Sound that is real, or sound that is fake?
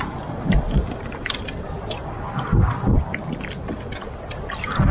real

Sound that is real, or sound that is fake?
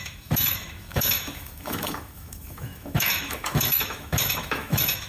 fake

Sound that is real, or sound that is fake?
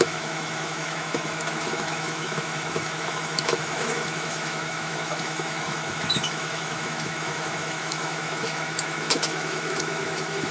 fake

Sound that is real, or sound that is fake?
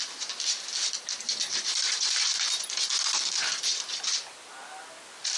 real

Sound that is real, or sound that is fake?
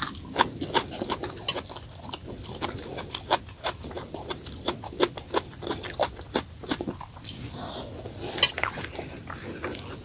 real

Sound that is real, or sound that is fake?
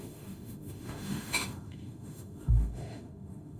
fake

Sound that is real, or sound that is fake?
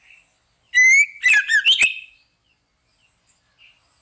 real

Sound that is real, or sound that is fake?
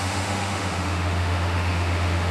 fake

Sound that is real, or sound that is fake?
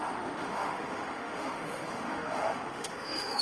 fake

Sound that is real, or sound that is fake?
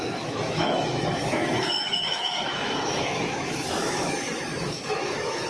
fake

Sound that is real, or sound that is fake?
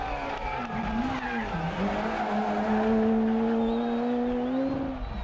real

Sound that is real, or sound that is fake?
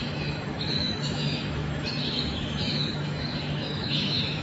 fake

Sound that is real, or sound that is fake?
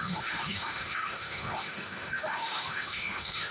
fake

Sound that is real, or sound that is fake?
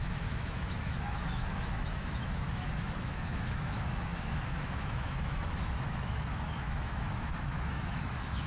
fake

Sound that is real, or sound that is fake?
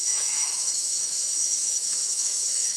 fake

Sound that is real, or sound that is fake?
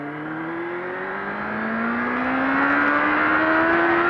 real